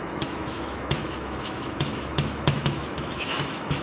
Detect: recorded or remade remade